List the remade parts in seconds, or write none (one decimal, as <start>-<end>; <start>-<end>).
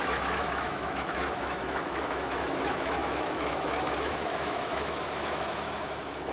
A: 0.0-6.3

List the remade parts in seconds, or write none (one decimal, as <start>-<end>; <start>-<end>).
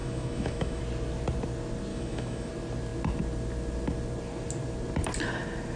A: 0.0-0.8; 1.9-2.5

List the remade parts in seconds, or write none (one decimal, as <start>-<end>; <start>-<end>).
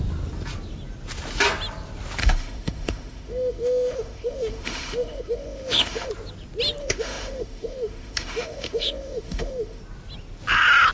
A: 2.2-6.1; 6.8-9.8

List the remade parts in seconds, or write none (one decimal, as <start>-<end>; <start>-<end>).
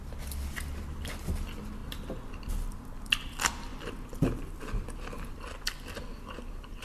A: none